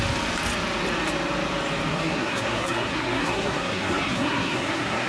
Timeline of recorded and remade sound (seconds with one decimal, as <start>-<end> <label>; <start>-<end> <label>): 0.0-1.9 recorded; 1.9-5.1 remade